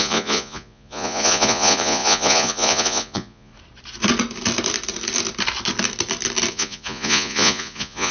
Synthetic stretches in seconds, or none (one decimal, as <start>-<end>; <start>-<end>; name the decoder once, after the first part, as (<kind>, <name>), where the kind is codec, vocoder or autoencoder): 0.0-3.5 (vocoder, Vocos); 6.5-8.1